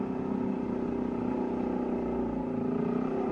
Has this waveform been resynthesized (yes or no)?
no